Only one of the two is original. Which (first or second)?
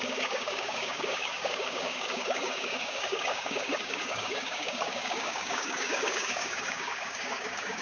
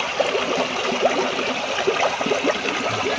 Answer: second